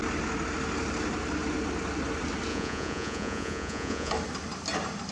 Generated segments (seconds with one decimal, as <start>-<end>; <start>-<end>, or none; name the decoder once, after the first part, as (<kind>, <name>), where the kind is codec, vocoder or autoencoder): 2.5-4.1 (vocoder, Vocos)

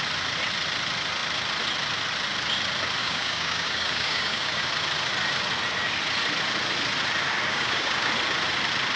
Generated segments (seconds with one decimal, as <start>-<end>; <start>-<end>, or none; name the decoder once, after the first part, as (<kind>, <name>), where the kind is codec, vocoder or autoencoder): 3.0-4.7 (codec, DAC); 7.5-8.1

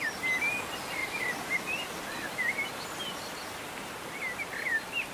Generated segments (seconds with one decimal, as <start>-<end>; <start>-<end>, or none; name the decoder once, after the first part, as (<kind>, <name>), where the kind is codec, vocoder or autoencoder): 1.0-4.1 (vocoder, BigVGAN v2)

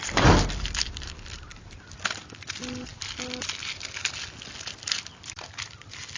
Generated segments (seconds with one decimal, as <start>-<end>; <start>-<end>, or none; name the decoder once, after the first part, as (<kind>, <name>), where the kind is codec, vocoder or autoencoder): none

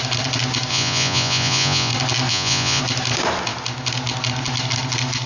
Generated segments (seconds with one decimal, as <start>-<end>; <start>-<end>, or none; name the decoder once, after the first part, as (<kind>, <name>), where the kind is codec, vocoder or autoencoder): 0.7-1.9 (vocoder, Vocos); 2.3-2.8

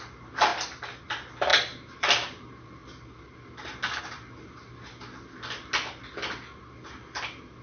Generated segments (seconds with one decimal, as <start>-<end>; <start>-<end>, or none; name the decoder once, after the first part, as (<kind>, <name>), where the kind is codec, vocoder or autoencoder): none

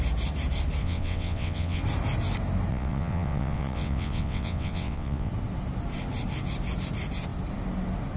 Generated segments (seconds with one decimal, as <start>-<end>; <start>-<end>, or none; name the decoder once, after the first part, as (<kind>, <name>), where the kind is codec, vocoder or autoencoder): 0.8-1.8 (vocoder, WaveNeXt); 2.7-5.3

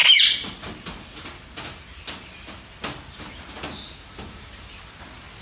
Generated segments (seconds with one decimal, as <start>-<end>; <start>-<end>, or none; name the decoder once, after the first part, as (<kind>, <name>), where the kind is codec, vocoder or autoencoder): none